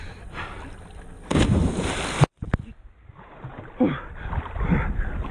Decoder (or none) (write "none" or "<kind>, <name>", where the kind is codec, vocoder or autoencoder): none